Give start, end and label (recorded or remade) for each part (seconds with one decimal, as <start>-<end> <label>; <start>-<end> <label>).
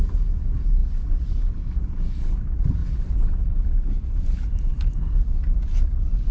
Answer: 0.0-2.8 recorded; 2.8-3.5 remade; 3.5-6.3 recorded